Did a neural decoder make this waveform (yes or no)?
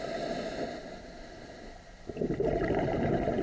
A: no